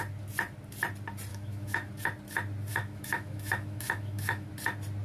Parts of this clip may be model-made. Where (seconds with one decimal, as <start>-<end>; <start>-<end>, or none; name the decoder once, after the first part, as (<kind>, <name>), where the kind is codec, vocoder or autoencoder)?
1.3-1.9 (autoencoder, DAC-VAE); 2.7-4.5